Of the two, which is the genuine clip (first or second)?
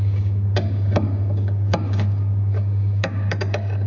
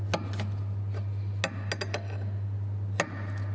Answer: second